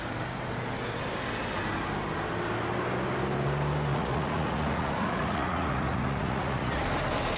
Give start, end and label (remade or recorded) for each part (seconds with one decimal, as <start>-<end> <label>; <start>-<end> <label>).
0.0-3.9 recorded; 3.9-6.8 remade; 6.8-7.4 recorded

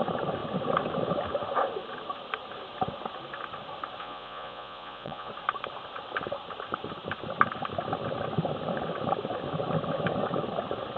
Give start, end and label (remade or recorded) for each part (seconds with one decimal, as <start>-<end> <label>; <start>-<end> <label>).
0.0-4.0 recorded; 4.0-5.3 remade; 5.3-11.0 recorded

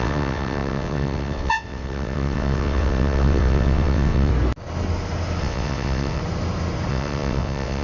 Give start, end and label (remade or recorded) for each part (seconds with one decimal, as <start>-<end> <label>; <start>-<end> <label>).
0.0-4.3 remade; 4.3-5.4 recorded; 5.4-6.2 remade; 6.2-6.9 recorded; 6.9-7.8 remade

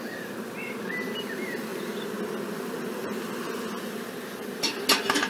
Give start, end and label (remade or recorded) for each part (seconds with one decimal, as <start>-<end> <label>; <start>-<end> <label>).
0.0-5.3 recorded

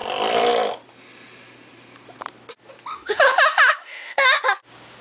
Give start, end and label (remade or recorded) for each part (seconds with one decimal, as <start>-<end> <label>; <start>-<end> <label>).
0.0-2.9 recorded; 2.9-4.4 remade; 4.4-5.0 recorded

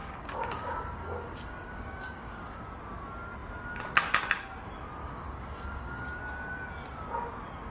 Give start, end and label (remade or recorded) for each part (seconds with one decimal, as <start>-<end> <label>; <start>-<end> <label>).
0.0-2.6 remade; 2.6-5.0 recorded; 5.0-6.2 remade; 6.2-7.7 recorded

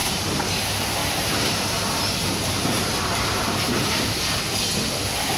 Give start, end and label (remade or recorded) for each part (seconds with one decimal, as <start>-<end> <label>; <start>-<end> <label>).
0.0-0.6 remade; 0.6-1.0 recorded; 1.0-4.2 remade; 4.2-5.4 recorded